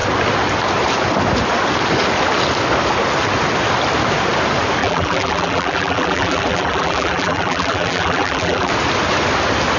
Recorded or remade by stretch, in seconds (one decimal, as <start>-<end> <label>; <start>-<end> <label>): 0.0-4.8 recorded; 4.8-8.7 remade; 8.7-9.8 recorded